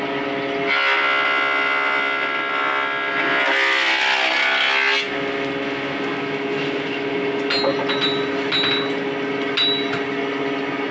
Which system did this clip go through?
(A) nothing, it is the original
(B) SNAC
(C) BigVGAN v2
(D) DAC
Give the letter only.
A